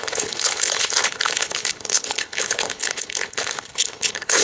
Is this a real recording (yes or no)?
no